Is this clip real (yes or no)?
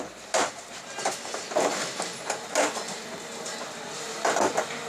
yes